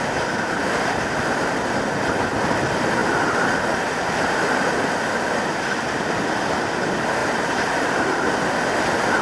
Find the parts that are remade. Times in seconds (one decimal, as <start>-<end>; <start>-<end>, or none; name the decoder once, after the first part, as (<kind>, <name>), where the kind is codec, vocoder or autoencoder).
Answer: 7.2-8.3 (vocoder, BigVGAN v2)